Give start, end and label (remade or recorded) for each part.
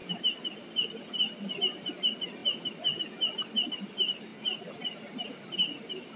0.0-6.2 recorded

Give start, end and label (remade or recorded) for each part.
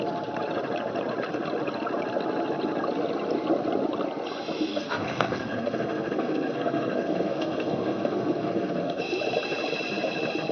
0.0-4.7 recorded; 4.7-9.0 remade; 9.0-10.5 recorded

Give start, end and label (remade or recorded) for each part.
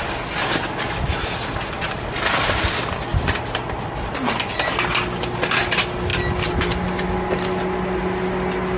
0.0-8.8 recorded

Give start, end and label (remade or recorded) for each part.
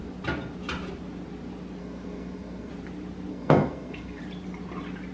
0.0-1.8 recorded; 1.8-2.7 remade; 2.7-3.3 recorded; 3.3-4.2 remade; 4.2-5.1 recorded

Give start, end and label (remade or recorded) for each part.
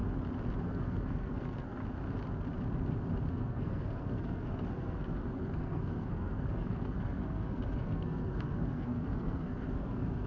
0.0-0.6 recorded; 0.6-1.8 remade; 1.8-3.3 recorded; 3.3-10.3 remade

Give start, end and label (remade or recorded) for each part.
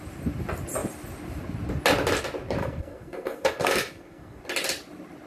0.0-2.6 recorded; 2.6-4.4 remade; 4.4-5.3 recorded